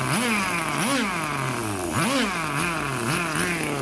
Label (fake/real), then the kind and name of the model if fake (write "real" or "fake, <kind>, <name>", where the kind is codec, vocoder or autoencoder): real